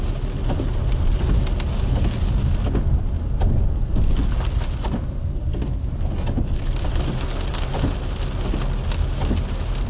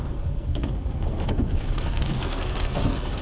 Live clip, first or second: first